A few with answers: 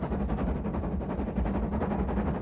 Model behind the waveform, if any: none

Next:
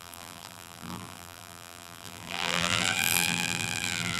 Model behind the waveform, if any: vocoder, BigVGAN v2